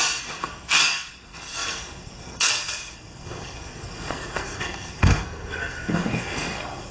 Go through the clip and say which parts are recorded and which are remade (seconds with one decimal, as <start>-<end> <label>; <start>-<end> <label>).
0.0-6.9 remade